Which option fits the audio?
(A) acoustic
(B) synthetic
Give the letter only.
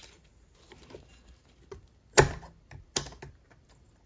A